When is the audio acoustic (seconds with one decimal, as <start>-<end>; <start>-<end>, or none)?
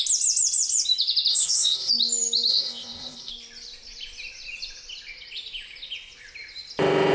0.0-1.3; 1.9-2.5; 3.3-7.1